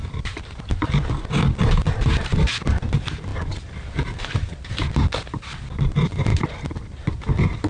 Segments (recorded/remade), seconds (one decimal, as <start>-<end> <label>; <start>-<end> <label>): 0.0-7.7 recorded